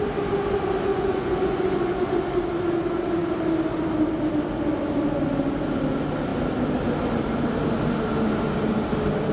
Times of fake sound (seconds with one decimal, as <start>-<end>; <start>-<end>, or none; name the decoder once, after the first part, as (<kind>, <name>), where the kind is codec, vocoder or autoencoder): 0.9-2.1 (vocoder, Vocos)